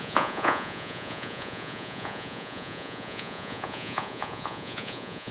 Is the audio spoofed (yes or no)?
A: yes